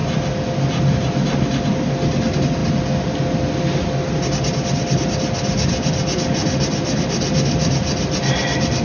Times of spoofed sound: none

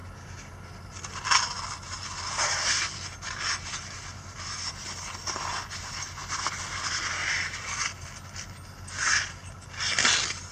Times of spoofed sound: none